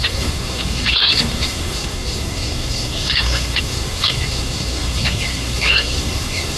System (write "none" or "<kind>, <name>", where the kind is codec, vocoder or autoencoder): codec, SNAC